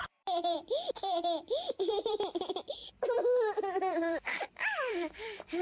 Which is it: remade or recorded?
remade